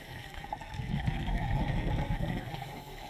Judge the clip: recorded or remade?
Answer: remade